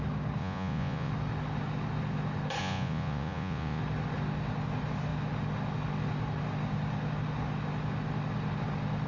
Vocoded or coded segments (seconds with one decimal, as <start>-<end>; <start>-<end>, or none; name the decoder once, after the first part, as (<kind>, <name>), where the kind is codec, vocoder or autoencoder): 0.4-1.1 (vocoder, Vocos); 2.6-3.8